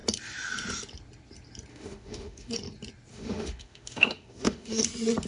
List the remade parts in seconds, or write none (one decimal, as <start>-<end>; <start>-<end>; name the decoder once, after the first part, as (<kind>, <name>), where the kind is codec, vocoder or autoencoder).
1.7-2.5 (autoencoder, DAC-VAE); 3.1-4.8